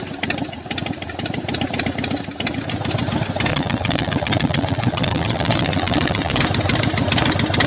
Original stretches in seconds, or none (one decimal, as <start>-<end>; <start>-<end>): 0.0-3.5; 6.4-7.7